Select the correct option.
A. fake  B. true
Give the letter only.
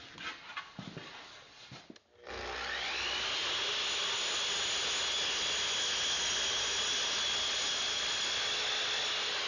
B